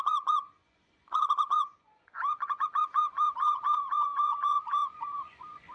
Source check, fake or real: fake